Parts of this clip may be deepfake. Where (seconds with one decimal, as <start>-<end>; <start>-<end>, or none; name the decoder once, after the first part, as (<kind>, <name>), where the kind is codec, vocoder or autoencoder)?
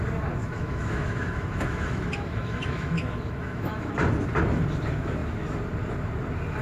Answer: 0.4-3.9 (autoencoder, DAC-VAE)